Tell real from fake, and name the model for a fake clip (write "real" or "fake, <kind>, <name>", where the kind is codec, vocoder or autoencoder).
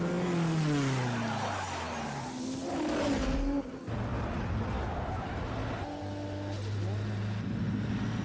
real